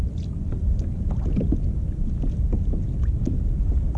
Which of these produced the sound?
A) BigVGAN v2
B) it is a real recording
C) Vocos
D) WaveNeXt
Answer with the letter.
B